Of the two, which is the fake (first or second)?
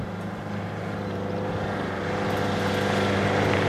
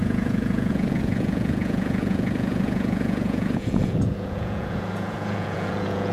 second